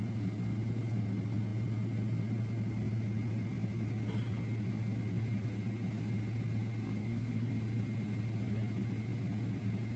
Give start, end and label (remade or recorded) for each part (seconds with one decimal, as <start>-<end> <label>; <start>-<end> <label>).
0.0-7.0 recorded; 7.0-7.5 remade; 7.5-10.0 recorded